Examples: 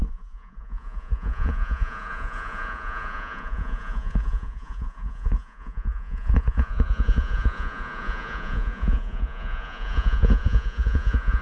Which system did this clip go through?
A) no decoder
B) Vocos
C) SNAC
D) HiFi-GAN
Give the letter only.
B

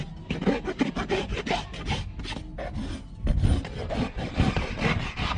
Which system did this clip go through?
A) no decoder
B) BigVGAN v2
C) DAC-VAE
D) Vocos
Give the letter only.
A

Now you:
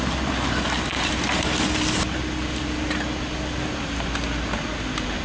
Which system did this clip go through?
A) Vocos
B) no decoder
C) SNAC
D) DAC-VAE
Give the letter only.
B